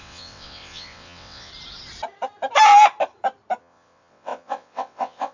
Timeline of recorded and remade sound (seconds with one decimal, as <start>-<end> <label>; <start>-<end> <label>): 0.0-1.5 remade; 1.5-3.6 recorded; 3.6-5.3 remade